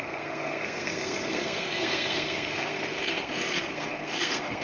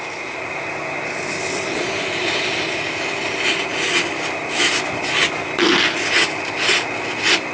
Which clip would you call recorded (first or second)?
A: second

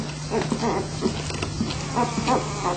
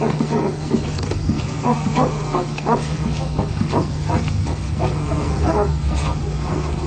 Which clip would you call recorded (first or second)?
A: first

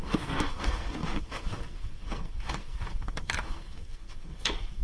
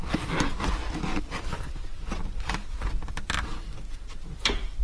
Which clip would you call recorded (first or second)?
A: second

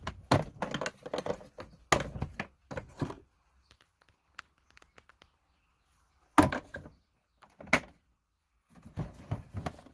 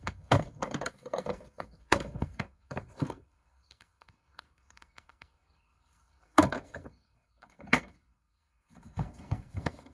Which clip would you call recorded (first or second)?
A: first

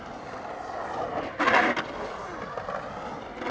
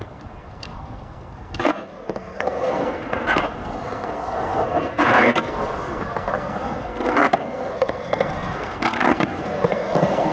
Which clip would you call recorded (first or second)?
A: first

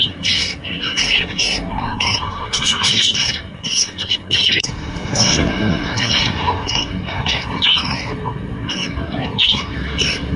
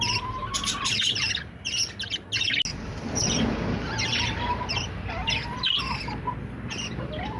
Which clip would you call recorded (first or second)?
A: second